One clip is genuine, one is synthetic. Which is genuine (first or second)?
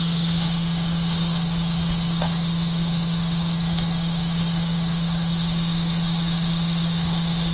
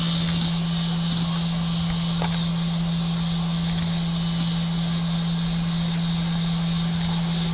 second